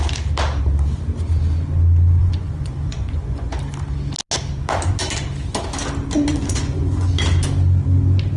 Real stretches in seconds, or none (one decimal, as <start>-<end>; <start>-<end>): 0.0-2.2; 3.5-6.4; 7.1-8.4

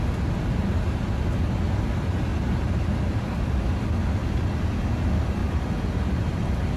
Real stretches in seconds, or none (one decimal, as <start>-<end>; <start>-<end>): 0.0-6.8

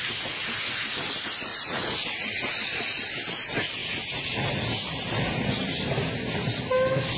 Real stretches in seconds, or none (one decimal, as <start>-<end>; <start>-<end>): 0.0-1.5; 2.5-3.8; 4.6-7.2